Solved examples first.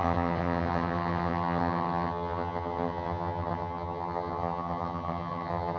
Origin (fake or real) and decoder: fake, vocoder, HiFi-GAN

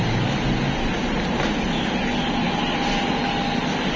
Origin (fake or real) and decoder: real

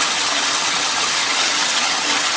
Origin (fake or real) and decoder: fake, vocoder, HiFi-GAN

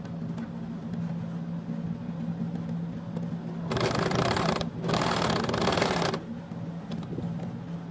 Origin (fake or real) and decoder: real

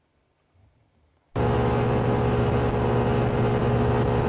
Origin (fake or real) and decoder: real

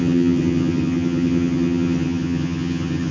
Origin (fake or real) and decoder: fake, vocoder, HiFi-GAN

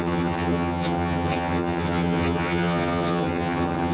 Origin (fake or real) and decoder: fake, vocoder, HiFi-GAN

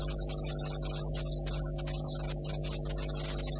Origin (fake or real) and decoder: real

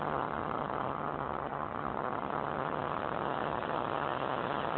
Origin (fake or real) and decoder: fake, vocoder, HiFi-GAN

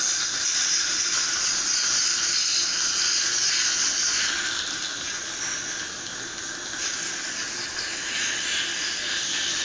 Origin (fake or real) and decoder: real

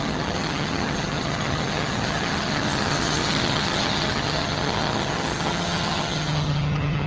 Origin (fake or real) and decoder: fake, vocoder, HiFi-GAN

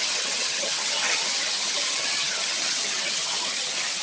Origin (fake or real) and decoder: fake, vocoder, HiFi-GAN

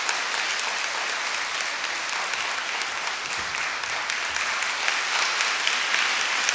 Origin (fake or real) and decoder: real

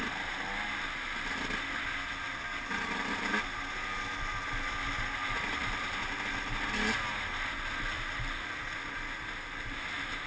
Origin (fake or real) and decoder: real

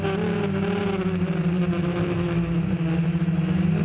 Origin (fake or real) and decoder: real